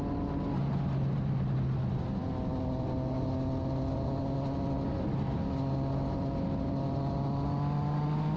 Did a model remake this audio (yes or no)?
no